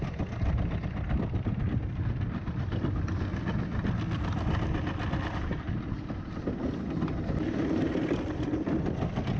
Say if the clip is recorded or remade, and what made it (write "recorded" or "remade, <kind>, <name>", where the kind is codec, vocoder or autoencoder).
recorded